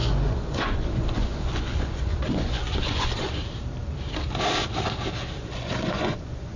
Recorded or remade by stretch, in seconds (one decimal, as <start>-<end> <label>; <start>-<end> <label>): 0.0-3.3 remade; 3.3-5.4 recorded; 5.4-6.6 remade